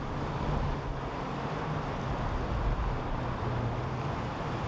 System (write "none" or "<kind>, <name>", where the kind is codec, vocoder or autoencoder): none